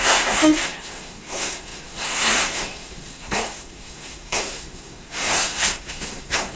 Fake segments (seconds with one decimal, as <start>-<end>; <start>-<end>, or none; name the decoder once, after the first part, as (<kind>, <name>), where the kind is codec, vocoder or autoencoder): 0.0-6.6 (codec, SNAC)